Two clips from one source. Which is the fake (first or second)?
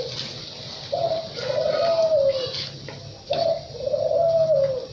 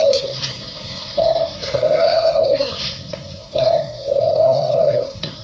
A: second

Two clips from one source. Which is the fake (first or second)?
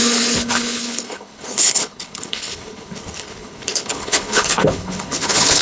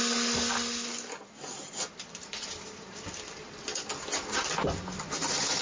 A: first